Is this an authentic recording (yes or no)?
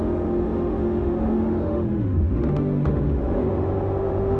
no